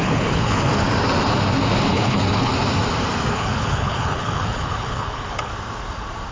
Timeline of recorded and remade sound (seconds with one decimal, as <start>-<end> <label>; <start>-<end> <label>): 0.0-0.7 remade; 0.7-1.9 recorded; 1.9-2.5 remade; 2.5-3.3 recorded; 3.3-5.5 remade; 5.5-6.3 recorded